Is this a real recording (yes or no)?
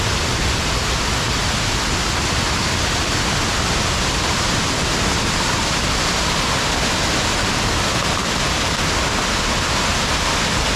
yes